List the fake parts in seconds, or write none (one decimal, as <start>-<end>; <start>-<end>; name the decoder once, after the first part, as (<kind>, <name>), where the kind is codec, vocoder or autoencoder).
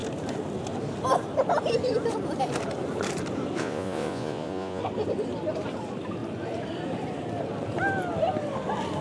3.6-4.8 (vocoder, Vocos)